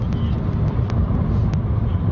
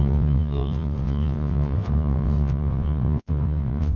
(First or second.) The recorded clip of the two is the first